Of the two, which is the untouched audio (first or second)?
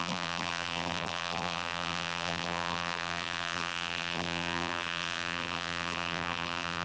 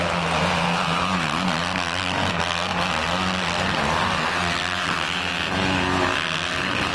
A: second